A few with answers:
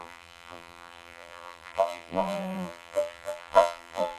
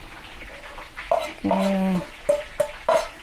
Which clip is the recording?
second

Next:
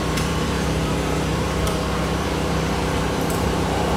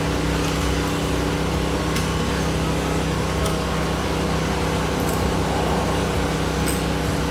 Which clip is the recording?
second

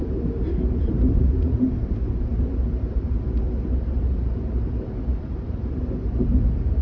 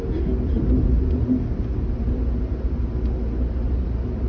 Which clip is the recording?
second